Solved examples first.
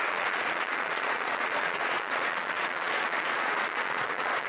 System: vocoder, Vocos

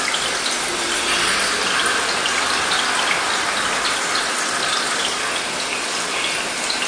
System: none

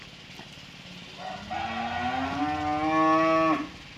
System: none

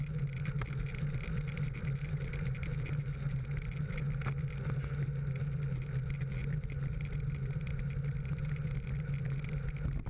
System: none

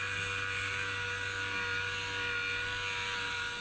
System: none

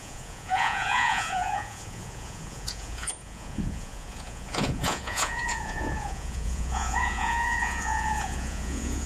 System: vocoder, Vocos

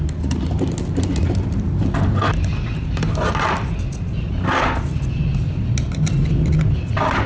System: none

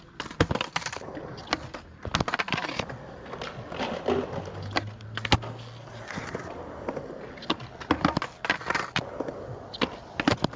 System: none